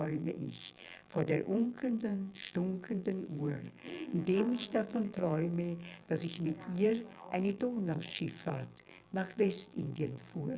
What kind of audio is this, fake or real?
fake